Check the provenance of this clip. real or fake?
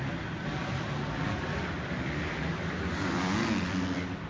real